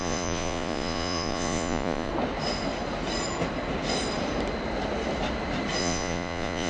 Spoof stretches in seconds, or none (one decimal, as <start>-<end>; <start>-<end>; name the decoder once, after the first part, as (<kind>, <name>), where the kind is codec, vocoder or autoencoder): 0.0-2.1 (vocoder, Vocos); 5.8-6.7